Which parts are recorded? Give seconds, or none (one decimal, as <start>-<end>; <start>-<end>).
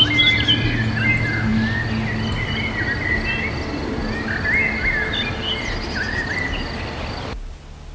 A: 0.0-7.9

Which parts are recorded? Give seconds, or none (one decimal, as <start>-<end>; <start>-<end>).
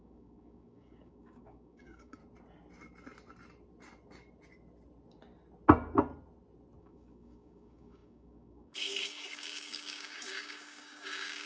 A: 2.2-6.8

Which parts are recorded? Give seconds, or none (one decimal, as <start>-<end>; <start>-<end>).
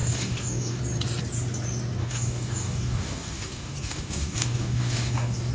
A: 0.8-2.0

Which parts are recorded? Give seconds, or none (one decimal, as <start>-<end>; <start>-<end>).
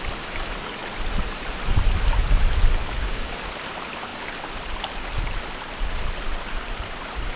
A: 0.0-2.8; 3.5-7.4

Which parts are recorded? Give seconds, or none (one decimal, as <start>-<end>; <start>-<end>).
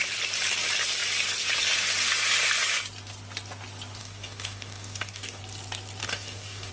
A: 0.0-4.0; 5.4-6.0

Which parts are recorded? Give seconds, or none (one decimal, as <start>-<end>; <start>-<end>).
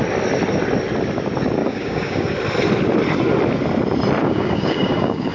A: 0.0-1.6; 2.3-4.2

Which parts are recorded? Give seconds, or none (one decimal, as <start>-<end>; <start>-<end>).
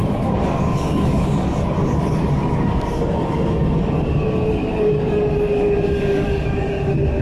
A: none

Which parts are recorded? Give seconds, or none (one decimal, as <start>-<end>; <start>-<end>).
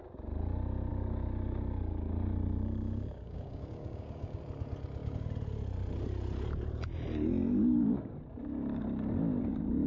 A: 0.0-0.9; 4.4-9.9